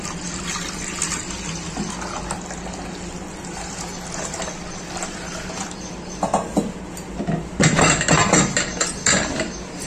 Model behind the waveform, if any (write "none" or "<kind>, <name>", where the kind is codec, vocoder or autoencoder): none